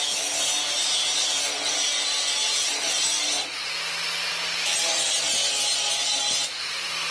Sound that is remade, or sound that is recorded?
recorded